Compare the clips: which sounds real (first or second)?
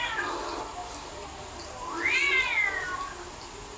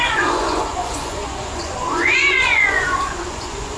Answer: first